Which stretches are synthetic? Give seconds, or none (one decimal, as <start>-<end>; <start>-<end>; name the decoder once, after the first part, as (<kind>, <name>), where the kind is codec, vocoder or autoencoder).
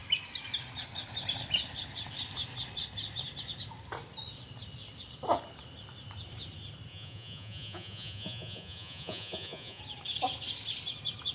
6.9-9.8 (vocoder, Vocos)